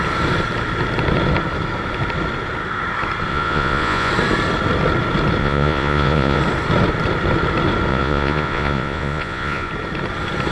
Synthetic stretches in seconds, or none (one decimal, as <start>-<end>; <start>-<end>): 3.3-4.1; 5.4-6.4; 7.9-9.7